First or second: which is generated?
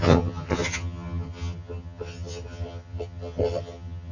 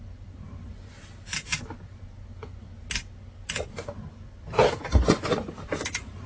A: first